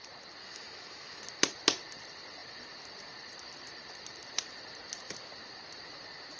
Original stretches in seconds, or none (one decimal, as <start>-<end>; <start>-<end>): 0.0-0.4; 1.2-6.4

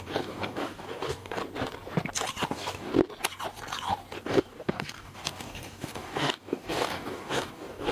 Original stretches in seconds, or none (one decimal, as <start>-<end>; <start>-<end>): 1.4-2.5; 2.9-4.2

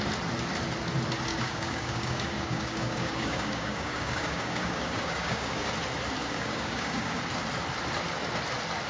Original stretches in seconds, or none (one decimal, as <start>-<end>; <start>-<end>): 0.0-1.3; 5.7-6.2; 7.2-8.9

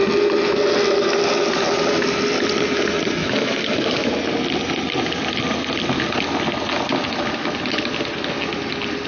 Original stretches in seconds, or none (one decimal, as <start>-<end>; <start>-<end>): 0.0-3.2; 4.1-9.1

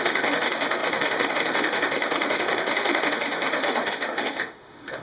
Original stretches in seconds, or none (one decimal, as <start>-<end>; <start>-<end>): none

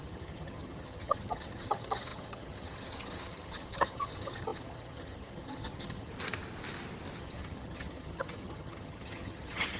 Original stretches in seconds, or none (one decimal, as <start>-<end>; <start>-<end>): 6.1-7.2

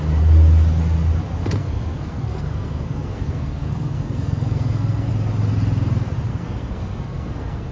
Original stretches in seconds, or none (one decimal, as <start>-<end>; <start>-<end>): 0.0-1.4; 5.1-6.3